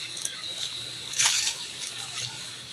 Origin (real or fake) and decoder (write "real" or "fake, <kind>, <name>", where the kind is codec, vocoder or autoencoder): fake, codec, DAC